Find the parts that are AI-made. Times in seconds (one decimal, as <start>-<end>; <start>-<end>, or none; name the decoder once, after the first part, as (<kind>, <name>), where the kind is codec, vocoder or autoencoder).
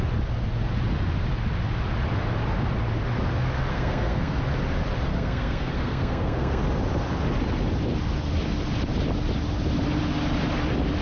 3.7-4.4 (codec, SNAC); 5.1-6.6